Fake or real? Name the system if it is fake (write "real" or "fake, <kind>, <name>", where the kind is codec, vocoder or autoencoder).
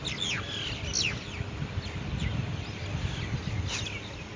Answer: real